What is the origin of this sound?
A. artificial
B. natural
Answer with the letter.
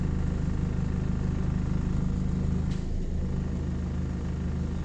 B